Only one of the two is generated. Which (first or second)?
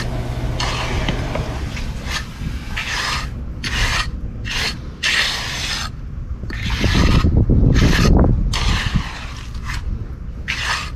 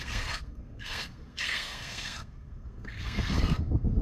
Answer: second